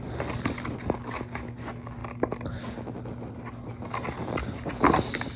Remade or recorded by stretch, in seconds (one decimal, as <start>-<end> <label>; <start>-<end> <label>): 0.0-5.4 recorded